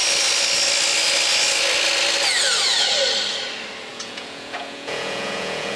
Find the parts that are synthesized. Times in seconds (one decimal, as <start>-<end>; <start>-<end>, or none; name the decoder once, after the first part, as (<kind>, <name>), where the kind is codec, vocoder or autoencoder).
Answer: 3.9-5.8 (vocoder, Vocos)